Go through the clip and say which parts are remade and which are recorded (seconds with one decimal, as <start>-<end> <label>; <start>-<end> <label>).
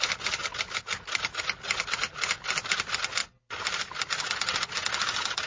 0.0-5.5 recorded